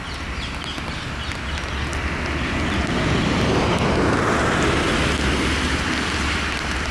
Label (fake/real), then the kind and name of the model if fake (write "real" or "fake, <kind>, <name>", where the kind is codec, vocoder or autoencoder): real